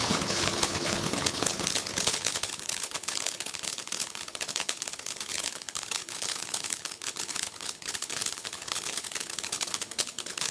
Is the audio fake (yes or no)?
yes